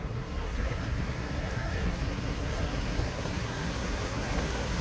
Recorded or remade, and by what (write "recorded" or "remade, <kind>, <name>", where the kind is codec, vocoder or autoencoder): remade, codec, SNAC